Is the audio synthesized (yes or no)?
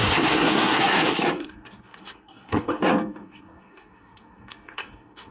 yes